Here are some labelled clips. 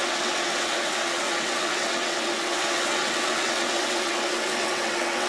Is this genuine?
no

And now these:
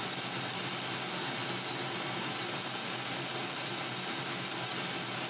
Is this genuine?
yes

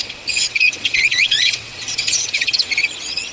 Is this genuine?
no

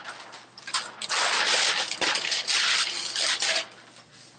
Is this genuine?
yes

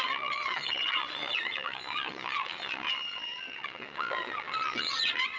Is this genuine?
no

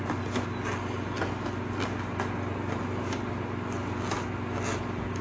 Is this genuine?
yes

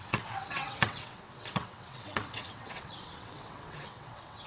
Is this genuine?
no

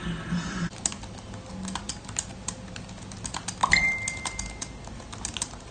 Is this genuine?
yes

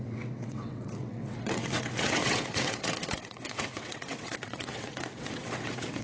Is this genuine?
no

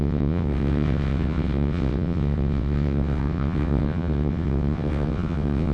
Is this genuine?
no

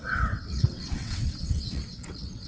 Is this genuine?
no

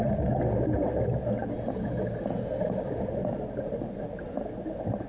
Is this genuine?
yes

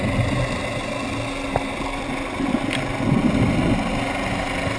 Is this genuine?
yes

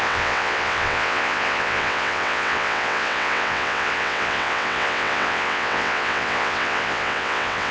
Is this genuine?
no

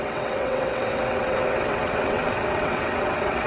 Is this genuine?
no